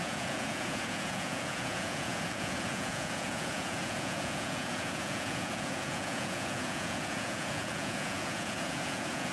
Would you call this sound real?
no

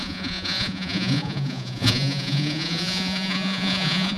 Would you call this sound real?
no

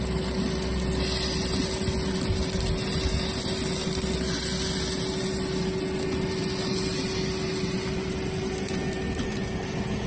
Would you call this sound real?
yes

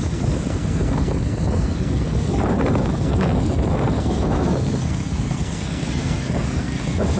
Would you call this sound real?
no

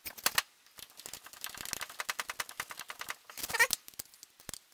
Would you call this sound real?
yes